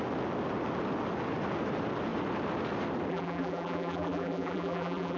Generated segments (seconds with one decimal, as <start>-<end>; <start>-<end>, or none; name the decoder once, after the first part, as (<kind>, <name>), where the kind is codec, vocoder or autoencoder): 3.1-5.2 (vocoder, BigVGAN v2)